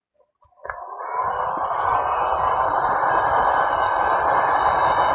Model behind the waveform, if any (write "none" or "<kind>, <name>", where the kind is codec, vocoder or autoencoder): none